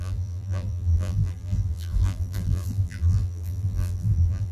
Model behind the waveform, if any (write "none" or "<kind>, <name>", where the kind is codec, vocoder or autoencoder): vocoder, BigVGAN v2